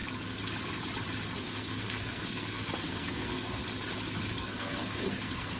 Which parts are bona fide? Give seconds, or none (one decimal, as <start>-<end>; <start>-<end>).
0.0-1.4; 3.6-4.4